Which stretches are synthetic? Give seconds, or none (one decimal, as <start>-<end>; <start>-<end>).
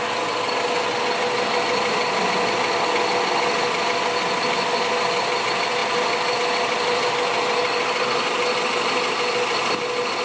none